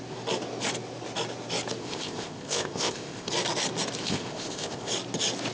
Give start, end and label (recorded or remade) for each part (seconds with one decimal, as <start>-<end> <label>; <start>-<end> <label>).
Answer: 0.0-1.8 recorded; 1.8-3.3 remade; 3.3-4.0 recorded; 4.0-4.9 remade; 4.9-5.5 recorded